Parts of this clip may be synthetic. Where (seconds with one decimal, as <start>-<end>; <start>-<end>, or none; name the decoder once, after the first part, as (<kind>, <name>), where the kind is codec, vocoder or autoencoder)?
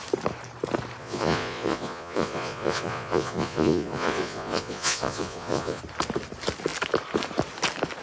1.0-5.8 (vocoder, Vocos)